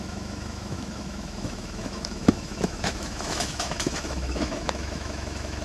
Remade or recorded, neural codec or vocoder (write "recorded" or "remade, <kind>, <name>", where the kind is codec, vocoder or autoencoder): remade, autoencoder, DAC-VAE